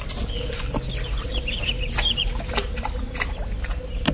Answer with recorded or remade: recorded